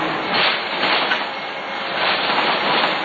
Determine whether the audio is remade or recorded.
recorded